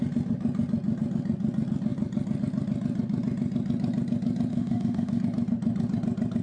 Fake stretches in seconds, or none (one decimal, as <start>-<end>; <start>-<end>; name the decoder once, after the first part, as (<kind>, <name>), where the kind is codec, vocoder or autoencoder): 4.5-5.2 (autoencoder, DAC-VAE)